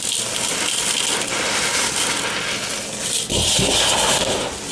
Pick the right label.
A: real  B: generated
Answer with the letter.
A